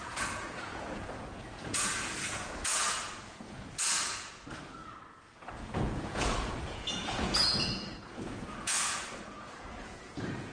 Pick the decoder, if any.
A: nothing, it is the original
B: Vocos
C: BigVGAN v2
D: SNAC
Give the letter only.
B